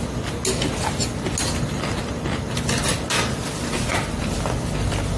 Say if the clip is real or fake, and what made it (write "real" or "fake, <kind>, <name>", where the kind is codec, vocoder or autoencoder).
real